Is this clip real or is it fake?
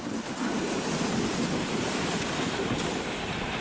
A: real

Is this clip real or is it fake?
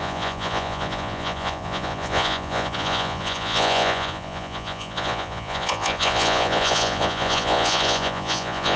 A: fake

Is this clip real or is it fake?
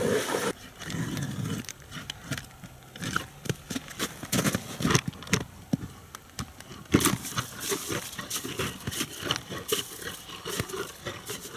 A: real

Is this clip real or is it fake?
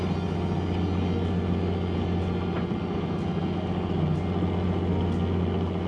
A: real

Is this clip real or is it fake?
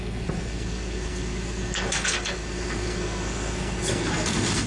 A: fake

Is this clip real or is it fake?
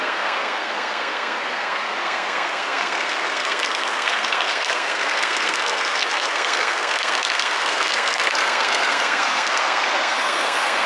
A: fake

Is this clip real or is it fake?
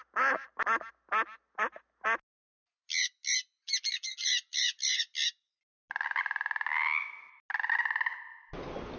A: real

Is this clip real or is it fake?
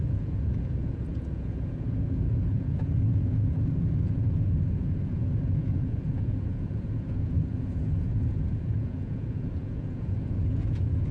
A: fake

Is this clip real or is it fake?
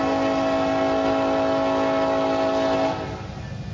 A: real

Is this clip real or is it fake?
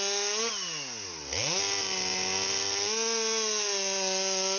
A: real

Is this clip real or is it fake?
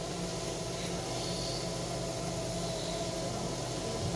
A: real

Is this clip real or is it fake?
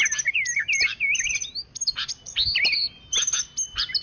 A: real